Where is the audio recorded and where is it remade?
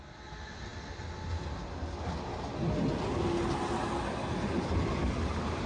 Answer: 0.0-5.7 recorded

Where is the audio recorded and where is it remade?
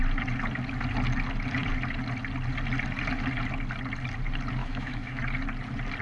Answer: 0.0-4.6 recorded; 4.6-5.2 remade; 5.2-6.0 recorded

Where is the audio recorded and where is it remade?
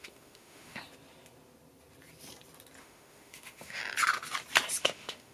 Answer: 0.0-0.8 remade; 0.8-2.8 recorded; 2.8-3.8 remade; 3.8-4.8 recorded; 4.8-5.3 remade